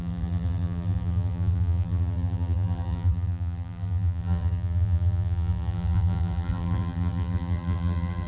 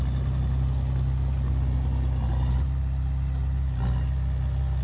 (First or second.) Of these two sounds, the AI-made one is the first